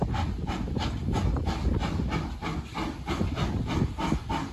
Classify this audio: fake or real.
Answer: real